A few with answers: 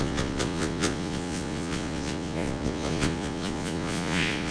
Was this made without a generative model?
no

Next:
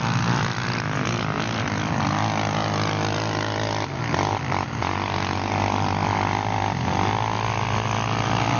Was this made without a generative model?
yes